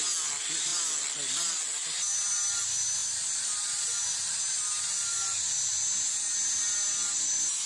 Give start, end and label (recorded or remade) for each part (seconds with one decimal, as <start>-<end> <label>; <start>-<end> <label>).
0.0-7.7 recorded